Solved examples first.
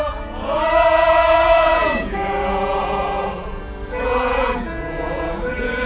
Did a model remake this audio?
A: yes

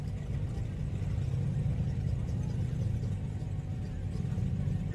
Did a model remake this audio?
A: no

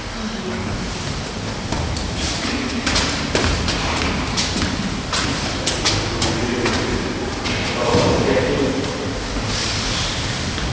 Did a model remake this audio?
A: no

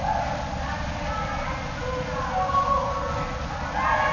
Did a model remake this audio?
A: no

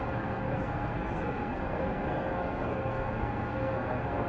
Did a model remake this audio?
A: yes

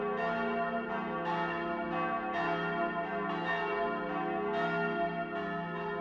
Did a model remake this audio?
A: no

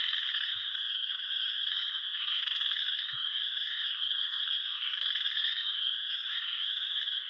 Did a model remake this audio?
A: yes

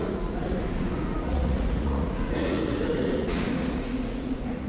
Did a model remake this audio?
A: yes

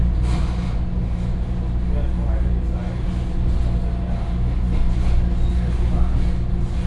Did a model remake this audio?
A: no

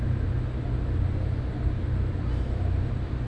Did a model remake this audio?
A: no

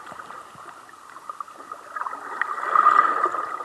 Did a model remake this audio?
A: no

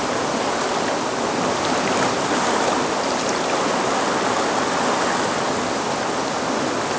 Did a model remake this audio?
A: no